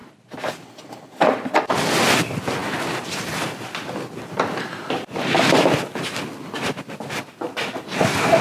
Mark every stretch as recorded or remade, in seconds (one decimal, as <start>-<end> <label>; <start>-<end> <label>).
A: 0.0-8.4 recorded

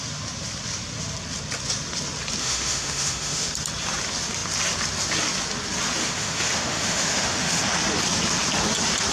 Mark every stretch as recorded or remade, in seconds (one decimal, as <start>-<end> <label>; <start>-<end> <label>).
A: 0.0-2.4 recorded; 2.4-3.5 remade; 3.5-6.0 recorded; 6.0-7.6 remade; 7.6-9.1 recorded

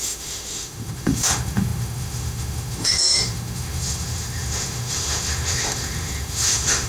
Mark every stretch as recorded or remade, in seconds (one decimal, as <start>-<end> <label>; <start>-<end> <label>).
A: 0.0-6.9 remade

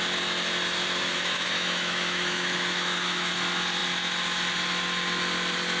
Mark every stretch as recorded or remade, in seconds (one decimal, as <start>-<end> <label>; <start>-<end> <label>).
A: 0.0-1.0 recorded; 1.0-3.3 remade; 3.3-5.8 recorded

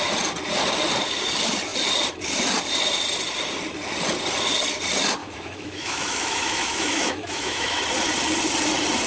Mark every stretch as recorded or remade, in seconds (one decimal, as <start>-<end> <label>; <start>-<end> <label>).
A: 0.0-5.2 recorded; 5.2-7.8 remade; 7.8-9.1 recorded

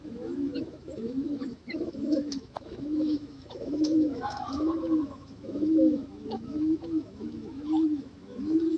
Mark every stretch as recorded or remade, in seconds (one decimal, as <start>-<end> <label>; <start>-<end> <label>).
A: 0.0-8.8 remade

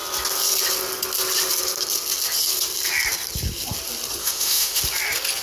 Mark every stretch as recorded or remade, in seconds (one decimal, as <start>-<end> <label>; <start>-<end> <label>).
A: 0.0-4.2 recorded; 4.2-4.8 remade; 4.8-5.4 recorded